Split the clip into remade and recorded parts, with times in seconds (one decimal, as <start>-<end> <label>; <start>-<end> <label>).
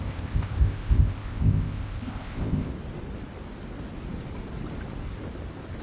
0.0-2.7 remade; 2.7-5.8 recorded